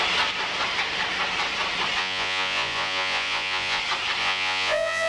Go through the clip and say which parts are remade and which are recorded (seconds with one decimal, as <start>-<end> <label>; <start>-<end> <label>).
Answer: 0.0-2.0 recorded; 2.0-3.8 remade; 3.8-4.2 recorded; 4.2-5.1 remade